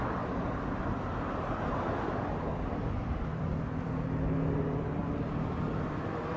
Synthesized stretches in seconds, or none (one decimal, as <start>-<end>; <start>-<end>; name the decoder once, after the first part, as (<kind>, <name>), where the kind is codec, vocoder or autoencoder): 5.0-6.4 (vocoder, BigVGAN v2)